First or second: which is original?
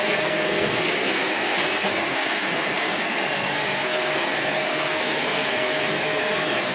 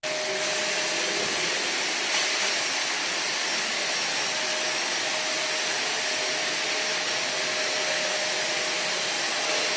second